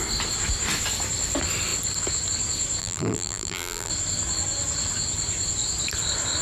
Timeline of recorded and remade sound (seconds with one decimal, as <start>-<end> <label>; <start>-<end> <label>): 0.0-2.8 recorded; 2.8-3.9 remade; 3.9-6.4 recorded